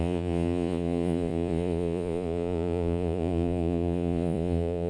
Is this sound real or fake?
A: fake